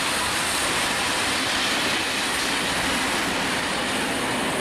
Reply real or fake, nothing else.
real